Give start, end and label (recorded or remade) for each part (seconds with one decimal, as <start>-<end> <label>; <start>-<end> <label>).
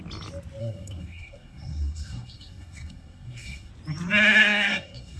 0.0-0.6 recorded; 0.6-3.7 remade; 3.7-4.4 recorded; 4.4-5.2 remade